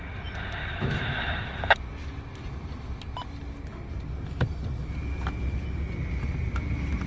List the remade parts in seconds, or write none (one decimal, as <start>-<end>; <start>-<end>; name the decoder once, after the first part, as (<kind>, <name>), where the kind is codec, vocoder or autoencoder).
0.6-1.6 (autoencoder, DAC-VAE)